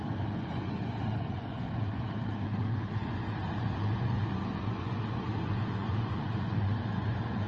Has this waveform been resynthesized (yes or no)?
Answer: yes